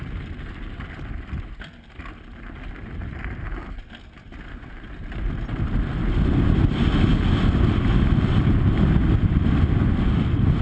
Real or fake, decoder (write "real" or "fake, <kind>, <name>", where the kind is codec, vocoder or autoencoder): real